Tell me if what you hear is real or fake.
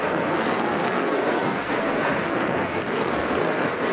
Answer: fake